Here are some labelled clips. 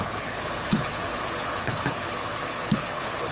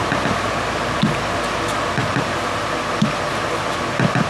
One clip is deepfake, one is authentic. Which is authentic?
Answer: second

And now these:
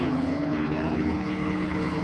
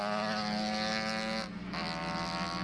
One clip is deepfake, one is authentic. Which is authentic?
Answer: second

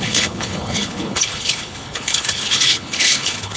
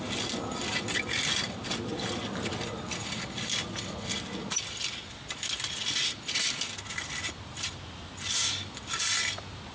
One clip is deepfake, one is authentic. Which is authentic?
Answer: second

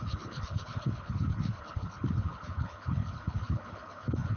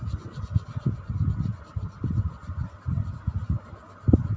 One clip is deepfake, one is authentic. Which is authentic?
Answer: second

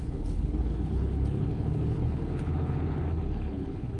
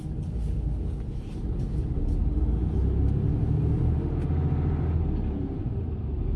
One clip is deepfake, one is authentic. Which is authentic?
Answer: second